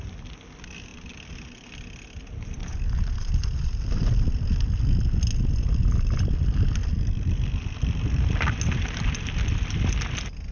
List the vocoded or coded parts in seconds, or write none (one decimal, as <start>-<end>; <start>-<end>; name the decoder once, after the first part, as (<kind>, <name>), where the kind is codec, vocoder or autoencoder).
none